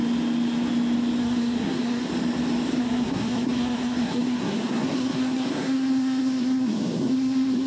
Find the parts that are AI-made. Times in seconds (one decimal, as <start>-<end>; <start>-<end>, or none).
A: 1.2-2.1; 2.8-7.7